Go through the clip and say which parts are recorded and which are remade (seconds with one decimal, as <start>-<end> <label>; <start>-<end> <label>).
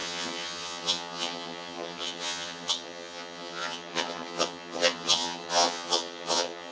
0.0-6.7 remade